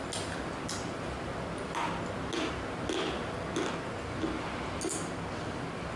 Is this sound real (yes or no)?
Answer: yes